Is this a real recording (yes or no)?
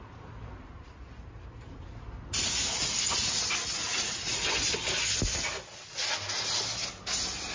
yes